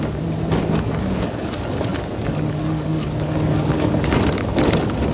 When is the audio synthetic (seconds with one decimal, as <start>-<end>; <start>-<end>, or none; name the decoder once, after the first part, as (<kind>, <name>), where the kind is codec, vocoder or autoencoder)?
0.6-1.5 (codec, DAC); 1.9-4.2